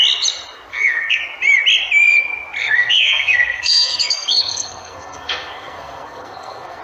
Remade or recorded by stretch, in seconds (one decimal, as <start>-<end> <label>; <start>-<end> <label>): 0.0-0.7 recorded; 0.7-1.2 remade; 1.2-2.6 recorded; 2.6-6.8 remade